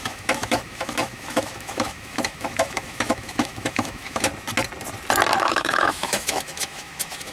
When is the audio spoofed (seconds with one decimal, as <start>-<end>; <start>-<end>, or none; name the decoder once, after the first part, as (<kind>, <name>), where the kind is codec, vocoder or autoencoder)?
0.0-4.3 (autoencoder, DAC-VAE); 5.4-7.3